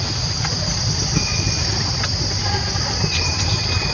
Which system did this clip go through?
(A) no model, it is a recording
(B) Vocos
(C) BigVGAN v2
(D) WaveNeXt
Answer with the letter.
A